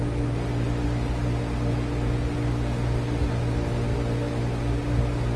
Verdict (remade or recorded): recorded